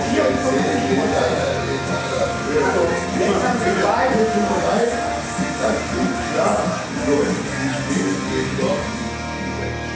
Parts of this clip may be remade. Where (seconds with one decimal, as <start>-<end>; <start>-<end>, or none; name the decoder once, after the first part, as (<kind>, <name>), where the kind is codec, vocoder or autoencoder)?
1.8-2.7 (codec, DAC); 4.0-4.9